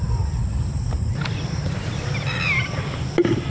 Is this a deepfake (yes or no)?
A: no